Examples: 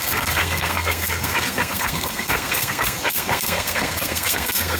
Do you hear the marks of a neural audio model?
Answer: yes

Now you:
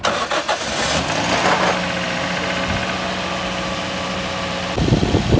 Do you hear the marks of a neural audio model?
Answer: no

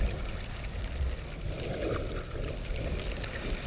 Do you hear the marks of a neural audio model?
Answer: no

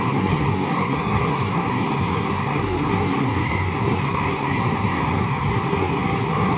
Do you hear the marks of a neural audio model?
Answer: yes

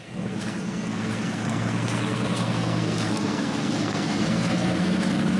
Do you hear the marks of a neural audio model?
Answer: yes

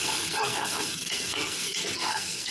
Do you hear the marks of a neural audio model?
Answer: yes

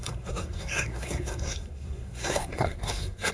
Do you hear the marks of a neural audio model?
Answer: yes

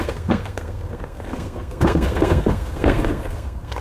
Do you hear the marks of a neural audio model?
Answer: yes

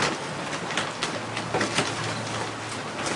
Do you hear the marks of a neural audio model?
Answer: no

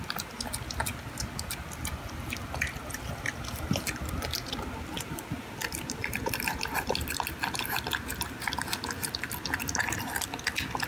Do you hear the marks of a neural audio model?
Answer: no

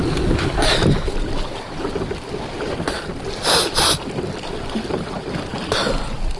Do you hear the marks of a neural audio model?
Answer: no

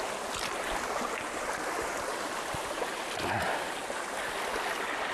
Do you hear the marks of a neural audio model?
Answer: no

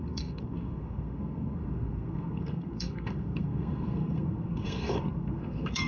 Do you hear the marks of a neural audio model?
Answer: yes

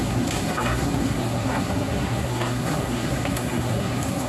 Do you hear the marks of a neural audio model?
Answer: yes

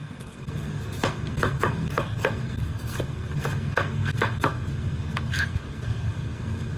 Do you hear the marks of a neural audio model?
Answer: yes